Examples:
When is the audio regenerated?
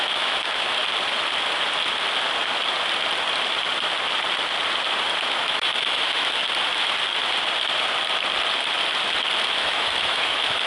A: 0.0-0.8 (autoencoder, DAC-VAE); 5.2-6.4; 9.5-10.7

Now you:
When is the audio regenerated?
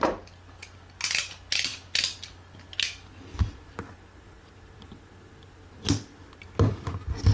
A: none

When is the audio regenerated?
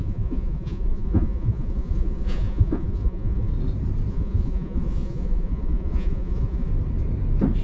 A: 0.0-3.5 (vocoder, Vocos); 4.1-6.7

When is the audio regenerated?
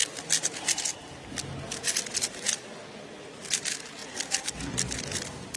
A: none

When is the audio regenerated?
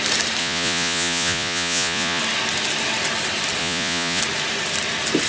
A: 0.4-2.2 (vocoder, Vocos); 3.6-4.2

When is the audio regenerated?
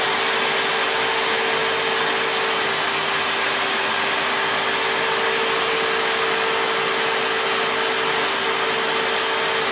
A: none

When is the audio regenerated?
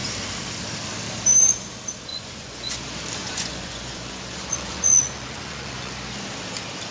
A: 2.1-2.8 (vocoder, Vocos); 3.2-5.9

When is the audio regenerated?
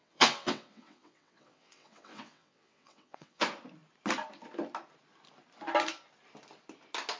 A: 0.0-3.4 (vocoder, WaveNeXt)